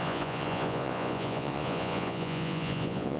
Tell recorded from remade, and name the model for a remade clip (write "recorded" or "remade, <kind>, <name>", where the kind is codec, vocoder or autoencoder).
remade, vocoder, Vocos